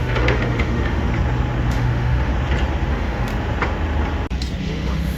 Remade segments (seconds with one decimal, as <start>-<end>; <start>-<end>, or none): 0.0-1.1; 1.7-2.3; 2.9-3.3; 4.7-5.2